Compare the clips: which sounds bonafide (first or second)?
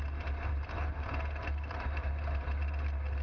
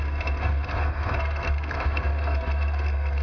first